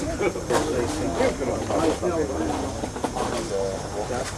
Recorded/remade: recorded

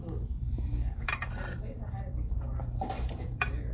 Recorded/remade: remade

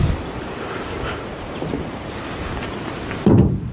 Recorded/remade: remade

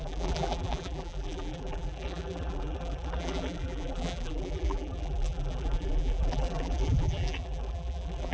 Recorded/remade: remade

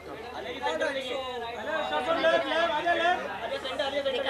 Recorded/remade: remade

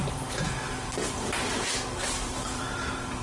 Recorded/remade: remade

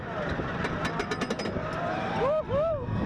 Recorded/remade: remade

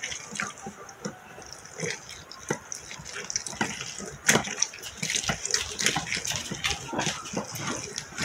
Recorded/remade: recorded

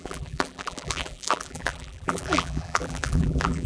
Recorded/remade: remade